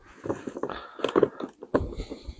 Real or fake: real